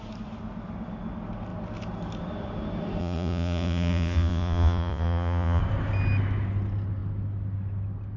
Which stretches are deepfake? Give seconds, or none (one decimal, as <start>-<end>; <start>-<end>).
3.0-5.6